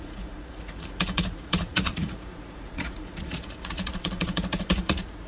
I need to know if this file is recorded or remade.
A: remade